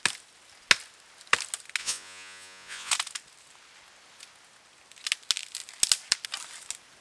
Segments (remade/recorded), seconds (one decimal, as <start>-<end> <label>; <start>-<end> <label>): 0.0-1.8 recorded; 1.8-2.9 remade; 2.9-7.0 recorded